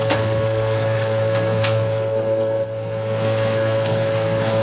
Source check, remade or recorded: remade